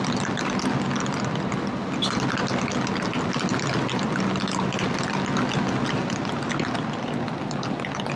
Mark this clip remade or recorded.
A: recorded